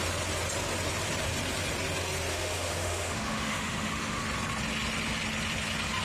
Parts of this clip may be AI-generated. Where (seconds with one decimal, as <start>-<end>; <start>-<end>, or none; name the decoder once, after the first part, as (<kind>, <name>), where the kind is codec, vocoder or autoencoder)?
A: 2.3-4.2 (autoencoder, DAC-VAE)